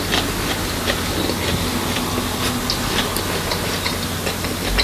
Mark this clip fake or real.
real